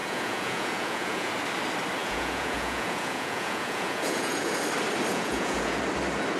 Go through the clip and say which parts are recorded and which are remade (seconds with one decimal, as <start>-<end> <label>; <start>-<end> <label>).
0.0-1.3 remade; 1.3-2.0 recorded; 2.0-4.5 remade; 4.5-5.1 recorded; 5.1-5.8 remade; 5.8-6.4 recorded